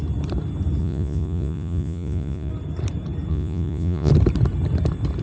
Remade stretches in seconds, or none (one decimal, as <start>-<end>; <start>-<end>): 0.8-2.5; 3.3-4.1